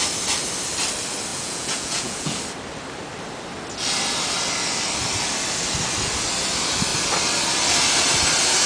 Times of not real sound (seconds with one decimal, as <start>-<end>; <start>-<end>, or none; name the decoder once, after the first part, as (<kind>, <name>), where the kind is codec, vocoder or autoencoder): 1.3-2.4 (vocoder, Vocos)